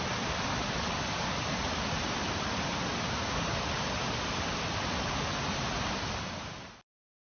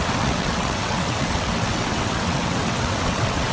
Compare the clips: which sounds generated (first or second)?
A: second